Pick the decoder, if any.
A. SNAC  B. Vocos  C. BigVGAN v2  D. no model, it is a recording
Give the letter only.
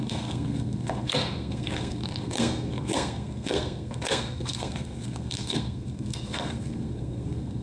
A